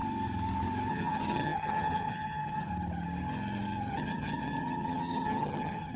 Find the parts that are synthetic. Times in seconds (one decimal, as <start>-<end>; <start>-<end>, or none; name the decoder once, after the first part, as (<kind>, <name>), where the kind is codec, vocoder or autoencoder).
0.9-2.7 (vocoder, HiFi-GAN); 3.9-6.0